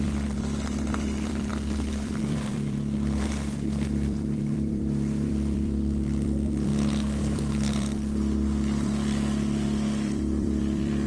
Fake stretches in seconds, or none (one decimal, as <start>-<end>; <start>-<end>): 0.0-6.7; 7.2-11.1

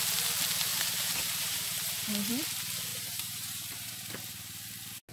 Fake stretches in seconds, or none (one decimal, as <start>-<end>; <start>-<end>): 0.7-2.3; 2.9-3.9

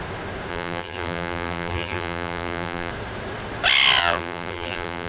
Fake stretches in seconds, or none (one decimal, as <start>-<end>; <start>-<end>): 0.5-2.9; 4.0-5.1

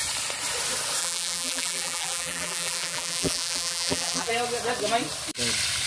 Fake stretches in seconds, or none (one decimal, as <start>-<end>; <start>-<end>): 1.0-4.3

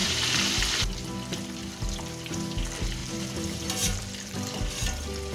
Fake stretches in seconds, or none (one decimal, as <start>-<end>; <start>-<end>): 0.0-0.7; 3.0-4.7

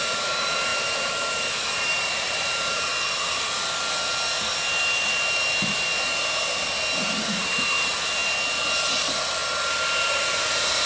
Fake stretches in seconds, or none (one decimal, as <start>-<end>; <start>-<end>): 0.0-2.9; 7.0-8.2; 9.0-9.4; 10.0-10.9

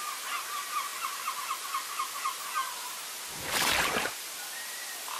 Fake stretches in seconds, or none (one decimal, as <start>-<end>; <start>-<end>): none